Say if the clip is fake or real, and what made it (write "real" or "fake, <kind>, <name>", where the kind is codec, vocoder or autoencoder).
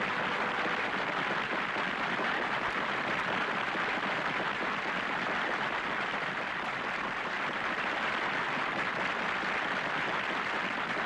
real